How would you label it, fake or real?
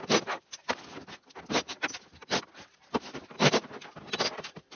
real